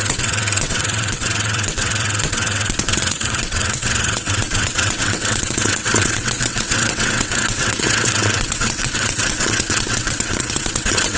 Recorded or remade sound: remade